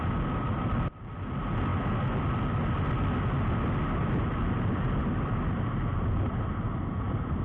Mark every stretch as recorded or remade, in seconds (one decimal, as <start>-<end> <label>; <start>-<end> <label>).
0.0-7.4 recorded

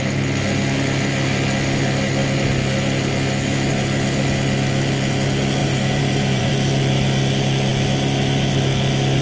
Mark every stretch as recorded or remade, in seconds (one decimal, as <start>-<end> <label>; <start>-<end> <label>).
0.0-5.6 recorded; 5.6-6.5 remade; 6.5-9.2 recorded